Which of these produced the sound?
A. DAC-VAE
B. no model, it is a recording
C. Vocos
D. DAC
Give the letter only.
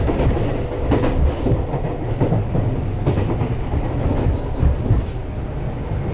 B